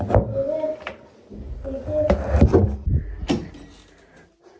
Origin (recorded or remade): recorded